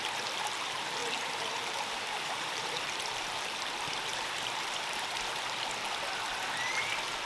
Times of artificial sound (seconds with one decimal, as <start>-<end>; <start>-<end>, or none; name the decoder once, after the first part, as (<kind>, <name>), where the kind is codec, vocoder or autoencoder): 1.0-3.5 (vocoder, BigVGAN v2); 4.1-5.1